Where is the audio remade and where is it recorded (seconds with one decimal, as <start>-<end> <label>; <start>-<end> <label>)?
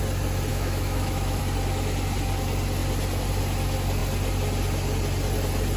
0.0-0.5 recorded; 0.5-1.4 remade; 1.4-5.8 recorded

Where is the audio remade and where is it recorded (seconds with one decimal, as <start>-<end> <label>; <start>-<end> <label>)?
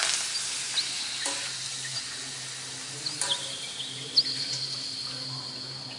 0.0-6.0 recorded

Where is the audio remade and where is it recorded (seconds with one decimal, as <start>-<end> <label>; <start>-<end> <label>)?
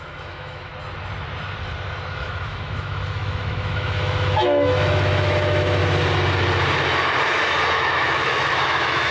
0.0-0.7 remade; 0.7-2.1 recorded; 2.1-5.8 remade; 5.8-7.7 recorded; 7.7-9.1 remade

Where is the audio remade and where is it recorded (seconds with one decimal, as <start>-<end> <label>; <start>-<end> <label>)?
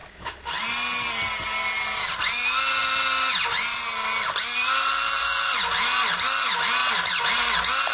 0.0-0.5 remade; 0.5-7.9 recorded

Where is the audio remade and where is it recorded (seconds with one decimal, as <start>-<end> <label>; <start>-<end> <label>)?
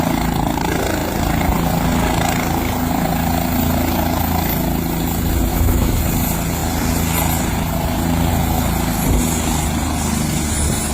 0.0-5.5 recorded; 5.5-6.0 remade; 6.0-10.9 recorded